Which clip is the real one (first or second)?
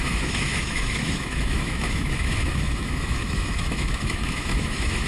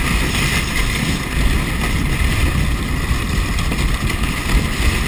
second